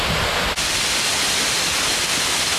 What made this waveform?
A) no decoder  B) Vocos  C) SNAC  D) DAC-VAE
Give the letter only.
A